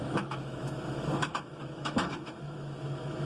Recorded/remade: remade